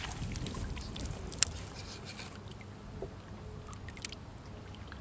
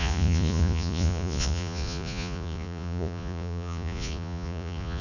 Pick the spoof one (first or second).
second